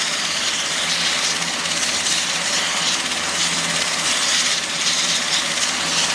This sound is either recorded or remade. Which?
recorded